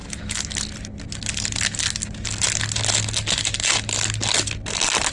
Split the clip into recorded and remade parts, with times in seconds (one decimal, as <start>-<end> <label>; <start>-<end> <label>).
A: 0.0-5.1 recorded